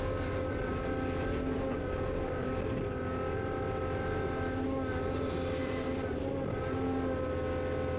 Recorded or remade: recorded